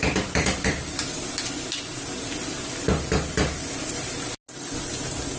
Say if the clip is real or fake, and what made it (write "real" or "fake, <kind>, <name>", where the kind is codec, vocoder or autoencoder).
real